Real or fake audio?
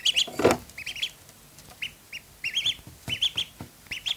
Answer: real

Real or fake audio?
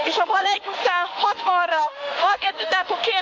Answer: fake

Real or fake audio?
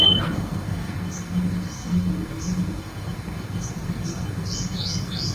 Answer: fake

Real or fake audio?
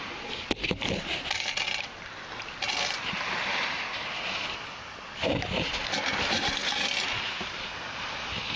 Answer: real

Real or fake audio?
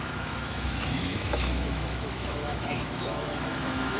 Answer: fake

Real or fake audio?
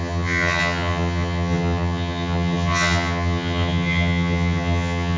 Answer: fake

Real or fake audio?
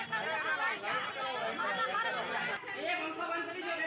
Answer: real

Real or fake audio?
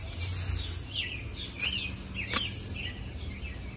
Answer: real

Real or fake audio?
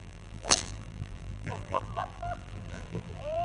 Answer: fake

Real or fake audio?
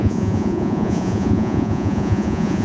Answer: fake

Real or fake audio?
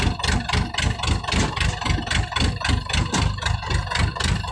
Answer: real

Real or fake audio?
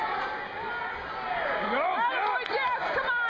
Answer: real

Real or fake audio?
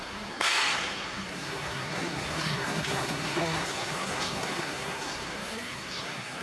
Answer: fake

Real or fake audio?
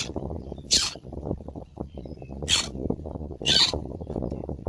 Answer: fake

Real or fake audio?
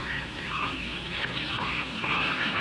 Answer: fake